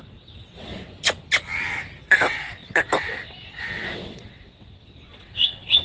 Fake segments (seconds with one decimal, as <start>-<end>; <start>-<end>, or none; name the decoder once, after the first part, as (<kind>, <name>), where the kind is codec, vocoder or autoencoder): 0.0-0.7 (vocoder, WaveNeXt); 2.0-5.8